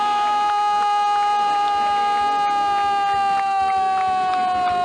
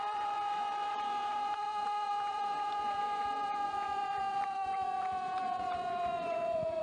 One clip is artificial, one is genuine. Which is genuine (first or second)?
first